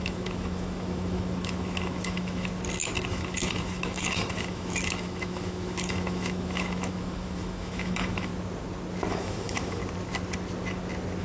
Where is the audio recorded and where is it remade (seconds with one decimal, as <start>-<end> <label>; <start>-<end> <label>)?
0.0-2.5 remade; 2.5-3.1 recorded; 3.1-8.3 remade; 8.3-9.1 recorded; 9.1-9.8 remade; 9.8-11.2 recorded